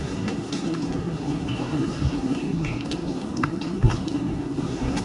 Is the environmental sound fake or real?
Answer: fake